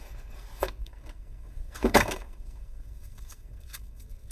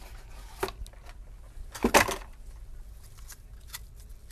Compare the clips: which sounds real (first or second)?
second